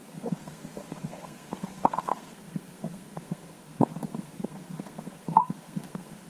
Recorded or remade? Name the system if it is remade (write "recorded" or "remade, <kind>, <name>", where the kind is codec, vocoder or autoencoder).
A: remade, codec, SNAC